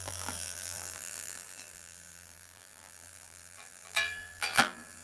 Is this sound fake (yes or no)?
yes